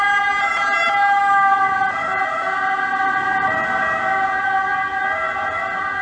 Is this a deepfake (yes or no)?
no